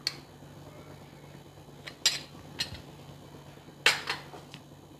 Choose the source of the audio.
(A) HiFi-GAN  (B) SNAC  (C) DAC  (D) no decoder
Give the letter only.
D